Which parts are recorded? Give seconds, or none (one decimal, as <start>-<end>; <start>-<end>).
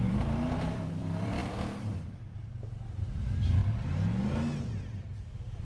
3.6-5.6